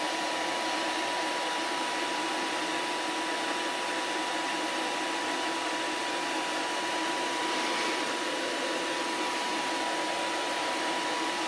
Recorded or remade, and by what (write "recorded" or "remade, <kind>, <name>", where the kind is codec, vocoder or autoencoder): recorded